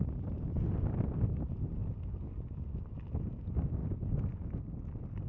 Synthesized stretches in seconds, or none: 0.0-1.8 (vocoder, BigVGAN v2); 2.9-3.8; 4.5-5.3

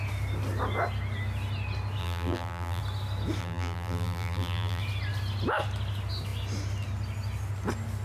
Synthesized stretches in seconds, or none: 2.0-2.8 (vocoder, BigVGAN v2); 3.4-4.8

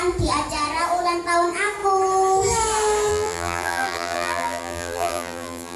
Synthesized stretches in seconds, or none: 3.1-5.8 (vocoder, BigVGAN v2)

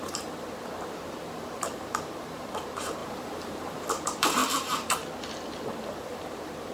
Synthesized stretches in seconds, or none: 0.0-4.4 (vocoder, BigVGAN v2); 5.5-6.7

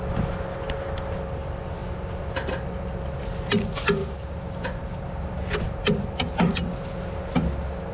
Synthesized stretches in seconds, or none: none